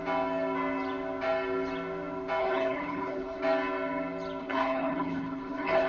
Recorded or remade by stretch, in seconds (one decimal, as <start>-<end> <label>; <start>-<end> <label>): 0.0-2.4 recorded; 2.4-3.4 remade; 3.4-4.4 recorded; 4.4-5.9 remade